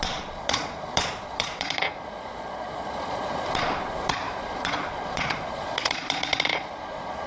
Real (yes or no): no